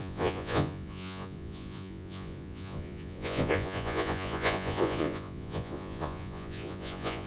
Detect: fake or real fake